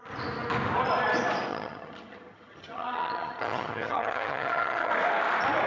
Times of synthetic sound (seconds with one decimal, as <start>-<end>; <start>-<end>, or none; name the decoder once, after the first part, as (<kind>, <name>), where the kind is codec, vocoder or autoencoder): 1.5-4.9 (vocoder, HiFi-GAN)